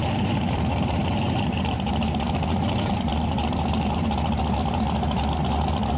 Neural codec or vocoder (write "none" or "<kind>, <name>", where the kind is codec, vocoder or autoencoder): vocoder, BigVGAN v2